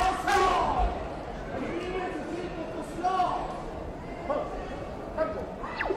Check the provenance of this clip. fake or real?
fake